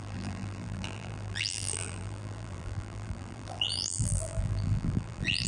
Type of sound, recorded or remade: remade